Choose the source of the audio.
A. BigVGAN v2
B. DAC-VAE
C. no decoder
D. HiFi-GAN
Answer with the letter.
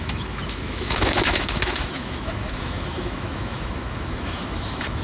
B